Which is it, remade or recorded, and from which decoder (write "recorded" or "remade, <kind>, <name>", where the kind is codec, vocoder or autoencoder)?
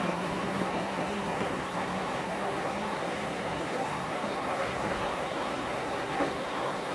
remade, codec, SNAC